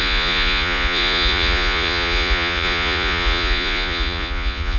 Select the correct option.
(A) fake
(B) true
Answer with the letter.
A